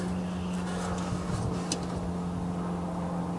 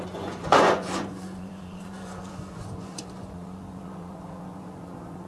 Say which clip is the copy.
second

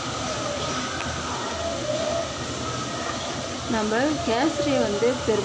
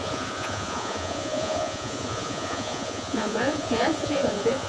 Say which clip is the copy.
second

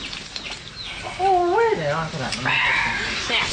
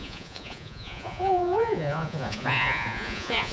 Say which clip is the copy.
second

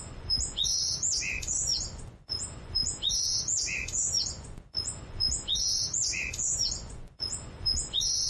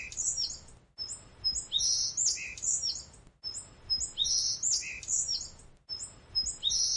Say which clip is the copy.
first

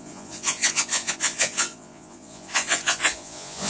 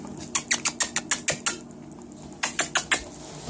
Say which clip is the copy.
first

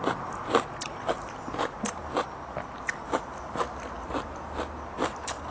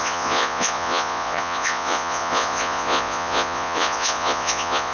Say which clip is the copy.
second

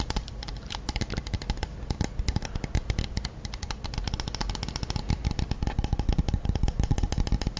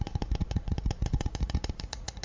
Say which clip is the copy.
second